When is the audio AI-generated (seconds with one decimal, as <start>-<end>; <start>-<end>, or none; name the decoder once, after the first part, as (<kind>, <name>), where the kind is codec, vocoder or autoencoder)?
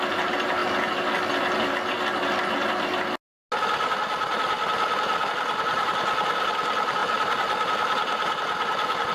0.0-0.6 (vocoder, BigVGAN v2); 5.3-7.0